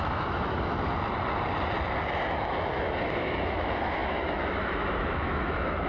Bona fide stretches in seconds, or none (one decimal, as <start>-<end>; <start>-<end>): 0.7-2.5